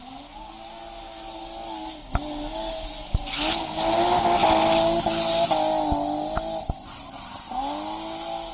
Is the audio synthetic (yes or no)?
no